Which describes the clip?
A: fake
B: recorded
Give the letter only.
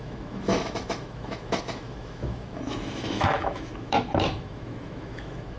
A